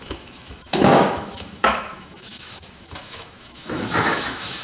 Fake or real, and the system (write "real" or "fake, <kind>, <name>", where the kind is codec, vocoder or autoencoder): fake, autoencoder, DAC-VAE